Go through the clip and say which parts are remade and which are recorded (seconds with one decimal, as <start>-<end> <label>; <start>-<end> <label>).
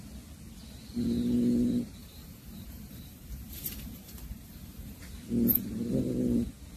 0.0-2.0 recorded; 2.0-5.0 remade; 5.0-6.8 recorded